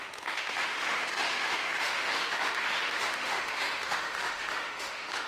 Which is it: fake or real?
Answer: fake